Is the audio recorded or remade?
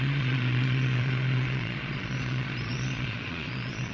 remade